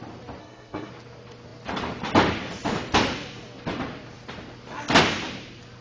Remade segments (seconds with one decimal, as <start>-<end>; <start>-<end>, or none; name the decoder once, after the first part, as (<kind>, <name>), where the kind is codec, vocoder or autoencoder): 0.4-0.9 (codec, SNAC)